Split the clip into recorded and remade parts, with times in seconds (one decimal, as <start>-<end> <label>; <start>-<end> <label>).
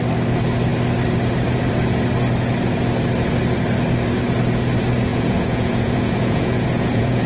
0.0-5.1 recorded; 5.1-7.3 remade